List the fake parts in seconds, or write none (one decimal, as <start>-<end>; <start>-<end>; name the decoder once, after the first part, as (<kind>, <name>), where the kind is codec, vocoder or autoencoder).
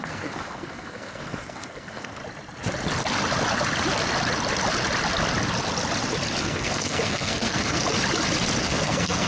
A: 0.0-2.2 (codec, SNAC); 6.4-7.8; 8.6-9.3